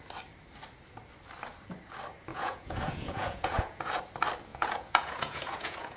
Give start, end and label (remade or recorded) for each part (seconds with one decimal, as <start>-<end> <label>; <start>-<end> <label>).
0.0-2.3 recorded; 2.3-4.0 remade; 4.0-4.5 recorded; 4.5-6.0 remade